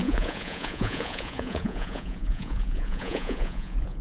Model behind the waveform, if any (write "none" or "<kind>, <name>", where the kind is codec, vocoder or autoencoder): vocoder, Vocos